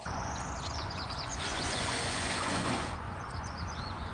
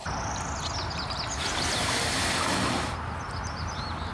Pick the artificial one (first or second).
first